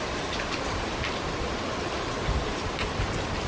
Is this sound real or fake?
real